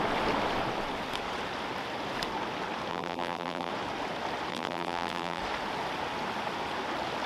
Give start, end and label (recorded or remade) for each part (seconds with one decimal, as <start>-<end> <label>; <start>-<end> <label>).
0.0-2.9 recorded; 2.9-3.7 remade; 3.7-4.5 recorded; 4.5-5.4 remade; 5.4-7.3 recorded